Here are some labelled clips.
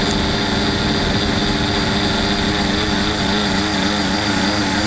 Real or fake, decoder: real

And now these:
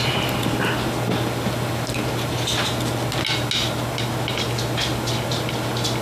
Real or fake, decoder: real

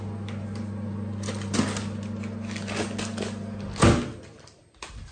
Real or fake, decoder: real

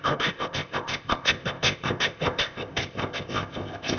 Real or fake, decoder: fake, codec, ZipCodec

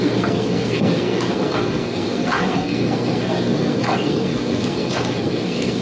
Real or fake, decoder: fake, codec, SNAC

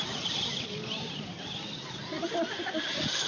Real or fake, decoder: real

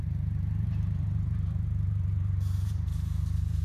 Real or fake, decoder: fake, vocoder, BigVGAN v2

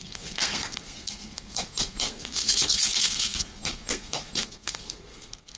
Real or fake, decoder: fake, codec, SNAC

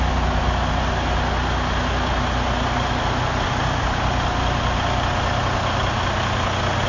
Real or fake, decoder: real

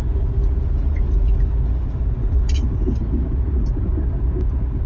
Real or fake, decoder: real